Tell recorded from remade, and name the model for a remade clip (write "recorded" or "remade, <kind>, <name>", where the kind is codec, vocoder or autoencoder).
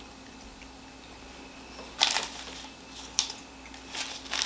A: recorded